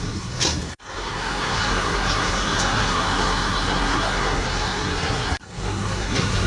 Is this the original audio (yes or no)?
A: no